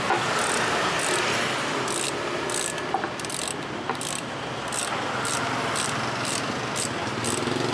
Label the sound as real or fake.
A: real